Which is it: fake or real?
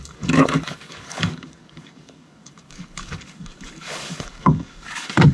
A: fake